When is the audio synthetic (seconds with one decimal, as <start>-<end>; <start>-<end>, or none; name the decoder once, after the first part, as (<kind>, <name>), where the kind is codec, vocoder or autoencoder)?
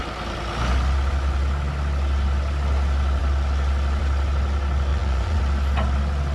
4.9-5.4 (vocoder, Vocos)